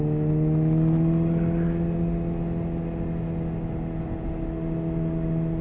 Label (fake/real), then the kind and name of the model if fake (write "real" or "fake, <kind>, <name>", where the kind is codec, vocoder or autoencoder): real